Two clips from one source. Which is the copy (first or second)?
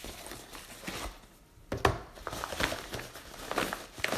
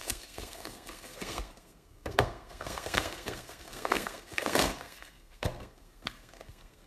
second